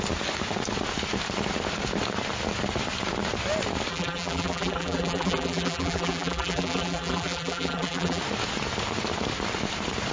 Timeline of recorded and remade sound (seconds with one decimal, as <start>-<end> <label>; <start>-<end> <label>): 0.0-3.9 recorded; 3.9-8.2 remade; 8.2-10.1 recorded